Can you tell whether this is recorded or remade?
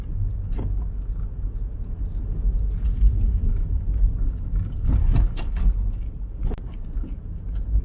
recorded